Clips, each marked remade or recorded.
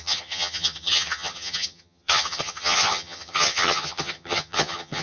remade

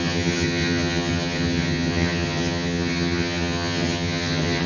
remade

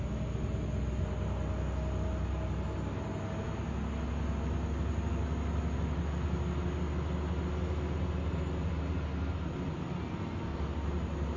recorded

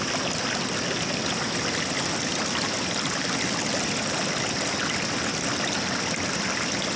recorded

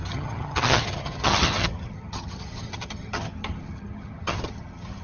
remade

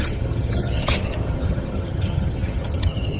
remade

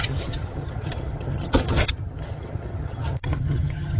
remade